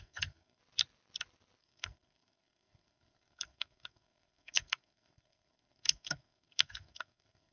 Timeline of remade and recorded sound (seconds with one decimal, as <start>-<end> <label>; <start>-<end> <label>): 0.0-0.6 remade; 0.6-1.6 recorded; 1.6-7.5 remade